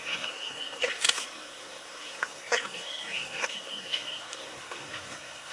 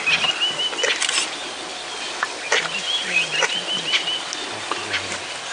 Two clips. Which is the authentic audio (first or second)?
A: second